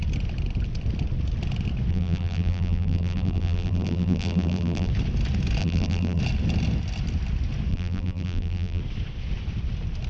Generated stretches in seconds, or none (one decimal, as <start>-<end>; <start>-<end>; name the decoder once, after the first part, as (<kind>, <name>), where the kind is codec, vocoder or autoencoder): 1.9-4.9 (vocoder, BigVGAN v2); 5.6-6.2; 7.7-8.8